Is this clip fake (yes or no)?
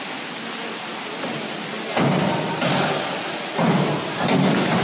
no